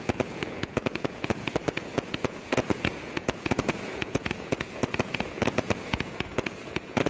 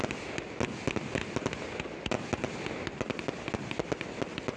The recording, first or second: second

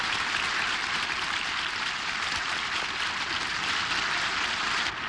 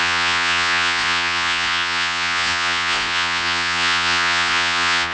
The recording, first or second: first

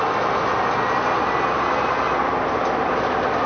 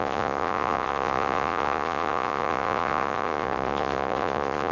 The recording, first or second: first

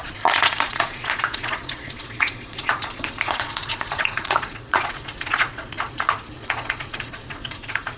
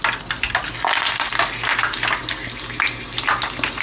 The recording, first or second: second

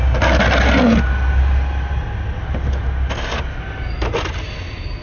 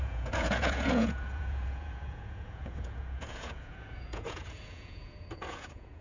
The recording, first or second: first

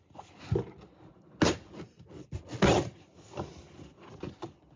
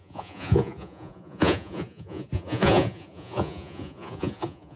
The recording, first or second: first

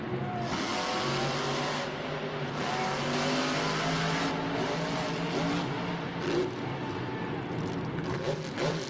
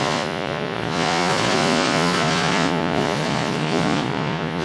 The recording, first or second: first